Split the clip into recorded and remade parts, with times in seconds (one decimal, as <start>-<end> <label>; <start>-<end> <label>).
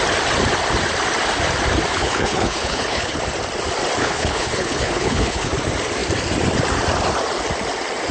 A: 0.0-2.0 recorded; 2.0-3.2 remade; 3.2-4.0 recorded; 4.0-5.5 remade; 5.5-8.1 recorded